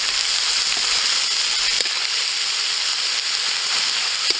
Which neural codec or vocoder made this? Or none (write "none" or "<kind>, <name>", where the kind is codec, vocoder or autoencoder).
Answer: none